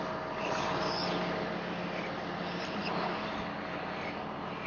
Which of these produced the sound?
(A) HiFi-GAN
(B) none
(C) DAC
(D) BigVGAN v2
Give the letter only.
B